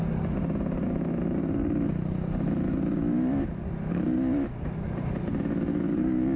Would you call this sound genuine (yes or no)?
yes